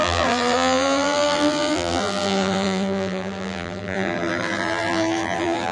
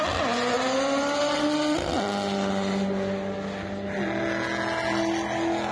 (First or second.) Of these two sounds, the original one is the second